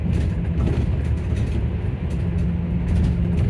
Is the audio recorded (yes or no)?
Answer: yes